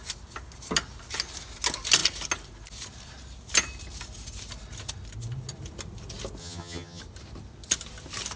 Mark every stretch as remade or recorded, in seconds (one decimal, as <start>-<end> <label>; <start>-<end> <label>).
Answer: 0.0-6.4 recorded; 6.4-7.0 remade; 7.0-8.4 recorded